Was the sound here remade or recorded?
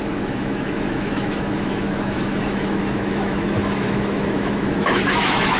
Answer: remade